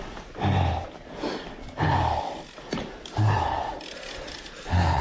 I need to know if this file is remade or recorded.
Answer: recorded